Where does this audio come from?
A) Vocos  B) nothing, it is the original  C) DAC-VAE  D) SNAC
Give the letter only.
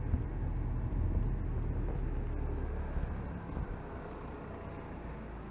B